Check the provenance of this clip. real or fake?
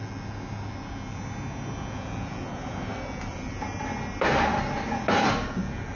real